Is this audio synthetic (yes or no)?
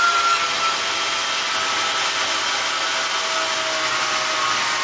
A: no